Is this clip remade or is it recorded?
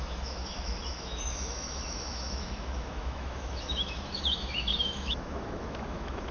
remade